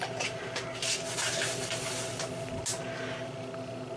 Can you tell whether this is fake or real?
real